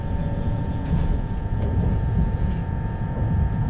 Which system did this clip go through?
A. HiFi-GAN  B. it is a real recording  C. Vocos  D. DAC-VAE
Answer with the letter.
C